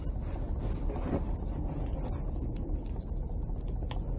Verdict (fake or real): real